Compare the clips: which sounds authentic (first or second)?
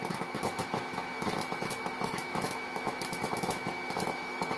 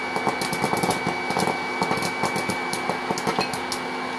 second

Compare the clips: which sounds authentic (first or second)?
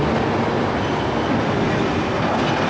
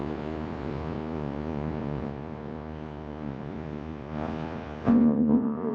first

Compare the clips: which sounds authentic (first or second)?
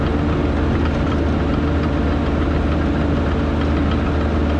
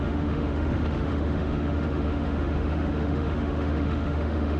first